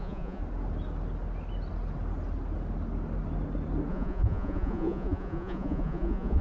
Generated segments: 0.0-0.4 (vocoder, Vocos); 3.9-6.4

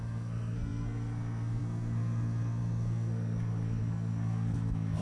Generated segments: 0.0-5.0 (codec, SNAC)

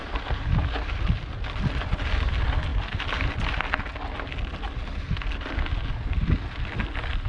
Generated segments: 0.0-0.5 (vocoder, BigVGAN v2); 2.7-3.4

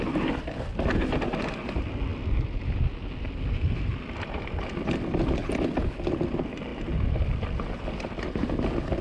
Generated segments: none

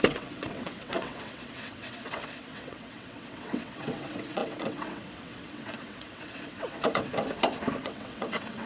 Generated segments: 0.0-7.1 (vocoder, WaveNeXt); 7.8-8.7

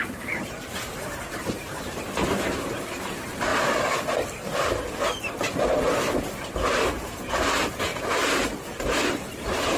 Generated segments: 0.0-3.5 (vocoder, BigVGAN v2); 6.2-9.8

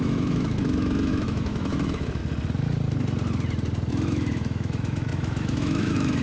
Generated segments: 0.0-2.2 (autoencoder, DAC-VAE); 3.9-6.2

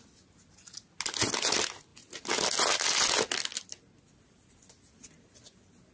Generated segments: none